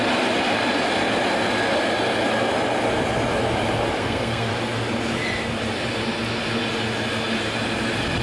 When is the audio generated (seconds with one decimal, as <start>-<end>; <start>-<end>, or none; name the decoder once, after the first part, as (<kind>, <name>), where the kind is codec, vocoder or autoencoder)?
4.0-4.5 (codec, SNAC)